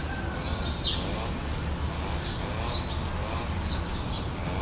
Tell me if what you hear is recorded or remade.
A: recorded